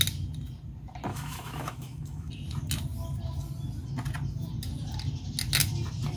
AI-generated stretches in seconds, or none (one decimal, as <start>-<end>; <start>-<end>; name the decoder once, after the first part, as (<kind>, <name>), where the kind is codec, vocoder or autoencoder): 1.1-2.3 (autoencoder, DAC-VAE)